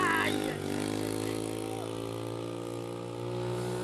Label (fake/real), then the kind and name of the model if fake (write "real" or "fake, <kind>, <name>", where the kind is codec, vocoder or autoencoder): real